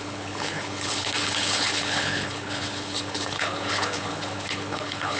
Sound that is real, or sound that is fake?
fake